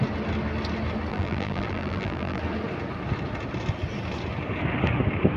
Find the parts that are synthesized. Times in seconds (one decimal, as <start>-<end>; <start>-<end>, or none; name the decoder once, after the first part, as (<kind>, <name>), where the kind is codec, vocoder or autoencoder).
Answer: 1.1-2.4 (vocoder, BigVGAN v2)